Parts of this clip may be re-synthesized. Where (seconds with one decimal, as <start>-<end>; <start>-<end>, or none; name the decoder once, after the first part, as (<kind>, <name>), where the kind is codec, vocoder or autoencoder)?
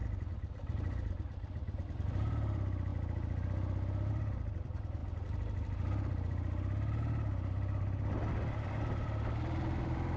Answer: 0.0-2.9 (vocoder, BigVGAN v2); 4.1-5.0; 8.3-10.2